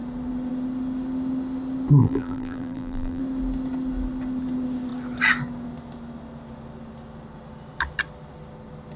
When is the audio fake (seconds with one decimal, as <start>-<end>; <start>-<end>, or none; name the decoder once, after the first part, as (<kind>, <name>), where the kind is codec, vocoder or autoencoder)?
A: 2.0-3.2 (vocoder, BigVGAN v2)